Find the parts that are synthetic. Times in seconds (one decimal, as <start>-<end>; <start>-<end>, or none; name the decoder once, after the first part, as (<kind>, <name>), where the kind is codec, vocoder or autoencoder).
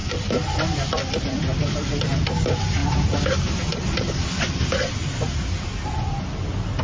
0.0-2.8 (vocoder, BigVGAN v2); 6.2-6.8